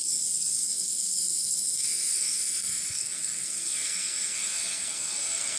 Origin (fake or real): fake